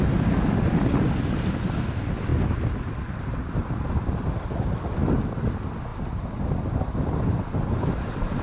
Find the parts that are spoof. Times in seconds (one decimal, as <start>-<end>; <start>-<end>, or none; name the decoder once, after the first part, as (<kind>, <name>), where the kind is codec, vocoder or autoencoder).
none